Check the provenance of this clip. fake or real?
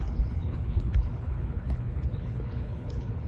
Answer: fake